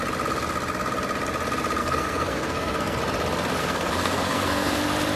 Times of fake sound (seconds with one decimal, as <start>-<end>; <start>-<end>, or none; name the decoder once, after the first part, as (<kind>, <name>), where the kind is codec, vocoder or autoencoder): 1.8-3.0 (codec, SNAC); 3.6-4.8